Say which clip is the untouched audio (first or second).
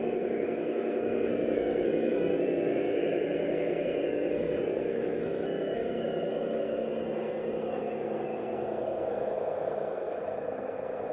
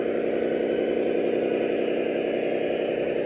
second